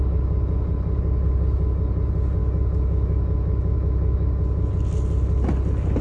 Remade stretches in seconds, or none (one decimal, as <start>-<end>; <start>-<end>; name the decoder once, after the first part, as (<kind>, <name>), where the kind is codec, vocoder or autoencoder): 2.4-4.7 (autoencoder, DAC-VAE)